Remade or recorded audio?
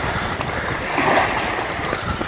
recorded